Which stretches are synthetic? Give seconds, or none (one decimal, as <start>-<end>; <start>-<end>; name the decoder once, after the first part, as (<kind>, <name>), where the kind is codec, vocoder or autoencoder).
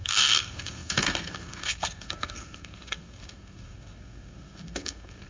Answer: 0.0-5.3 (codec, SNAC)